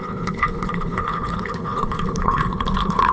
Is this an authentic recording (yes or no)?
no